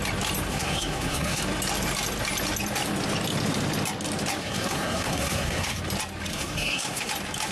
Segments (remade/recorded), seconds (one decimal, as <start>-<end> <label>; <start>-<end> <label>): 0.0-0.5 recorded; 0.5-1.4 remade; 1.4-4.4 recorded; 4.4-5.8 remade; 5.8-6.3 recorded; 6.3-7.1 remade; 7.1-7.5 recorded